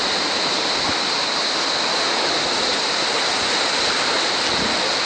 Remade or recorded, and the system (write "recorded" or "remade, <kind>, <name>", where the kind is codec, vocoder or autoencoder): recorded